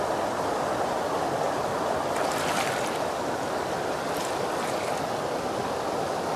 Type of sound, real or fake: real